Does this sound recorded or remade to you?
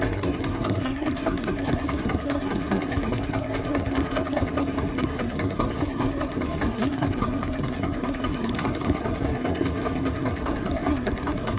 remade